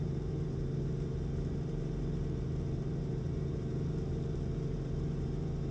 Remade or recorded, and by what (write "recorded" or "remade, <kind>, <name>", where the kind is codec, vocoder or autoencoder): remade, vocoder, BigVGAN v2